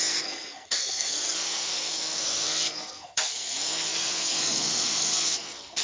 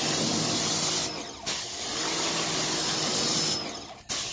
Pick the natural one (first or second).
second